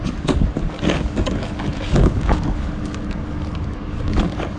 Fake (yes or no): yes